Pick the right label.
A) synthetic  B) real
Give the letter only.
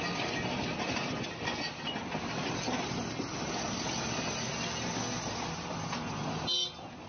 B